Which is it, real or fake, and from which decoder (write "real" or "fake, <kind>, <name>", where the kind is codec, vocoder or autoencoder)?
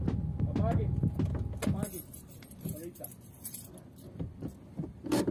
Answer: real